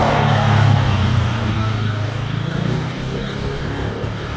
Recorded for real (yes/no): no